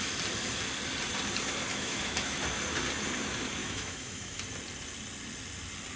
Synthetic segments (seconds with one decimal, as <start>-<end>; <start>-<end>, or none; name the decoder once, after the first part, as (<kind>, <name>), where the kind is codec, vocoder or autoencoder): 1.7-2.4 (autoencoder, DAC-VAE); 3.6-4.4